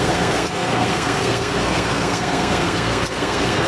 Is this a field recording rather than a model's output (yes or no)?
no